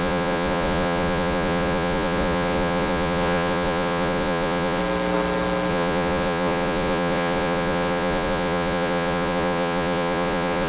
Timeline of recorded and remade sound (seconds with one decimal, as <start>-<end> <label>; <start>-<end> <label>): 0.0-4.8 remade; 4.8-5.7 recorded; 5.7-10.7 remade